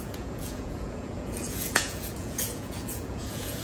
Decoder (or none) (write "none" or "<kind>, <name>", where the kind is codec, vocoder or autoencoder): vocoder, Vocos